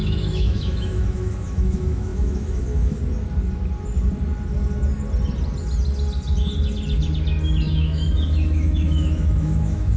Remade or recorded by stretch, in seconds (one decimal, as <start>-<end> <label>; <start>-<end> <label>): 0.0-3.0 remade; 3.0-7.7 recorded; 7.7-10.0 remade